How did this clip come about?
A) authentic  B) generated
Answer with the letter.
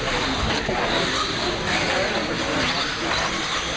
A